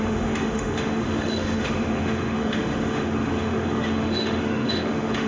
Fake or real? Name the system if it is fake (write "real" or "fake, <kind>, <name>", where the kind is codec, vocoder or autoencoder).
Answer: fake, autoencoder, DAC-VAE